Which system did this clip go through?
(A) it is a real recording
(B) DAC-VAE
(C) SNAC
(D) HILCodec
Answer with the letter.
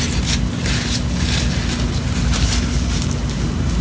A